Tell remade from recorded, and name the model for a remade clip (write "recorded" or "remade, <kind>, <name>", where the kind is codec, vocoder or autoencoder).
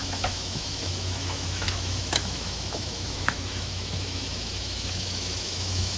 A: remade, autoencoder, DAC-VAE